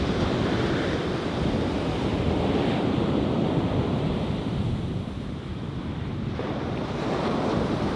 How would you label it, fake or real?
fake